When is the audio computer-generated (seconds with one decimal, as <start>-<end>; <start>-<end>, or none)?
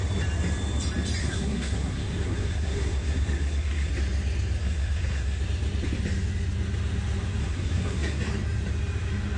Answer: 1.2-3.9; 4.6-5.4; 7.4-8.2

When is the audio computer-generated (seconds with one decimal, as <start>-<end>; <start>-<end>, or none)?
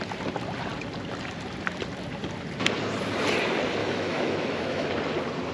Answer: 3.8-4.9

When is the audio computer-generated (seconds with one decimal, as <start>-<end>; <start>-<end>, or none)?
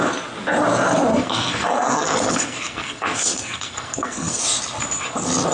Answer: 1.1-4.4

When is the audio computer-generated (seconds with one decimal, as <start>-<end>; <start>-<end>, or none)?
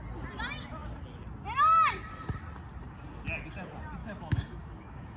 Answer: 4.0-5.2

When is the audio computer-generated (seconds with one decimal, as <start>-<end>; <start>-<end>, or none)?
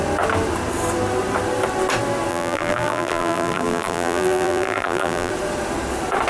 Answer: 2.3-5.3